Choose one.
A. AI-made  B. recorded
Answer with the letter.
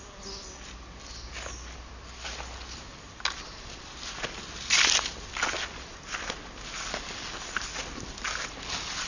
B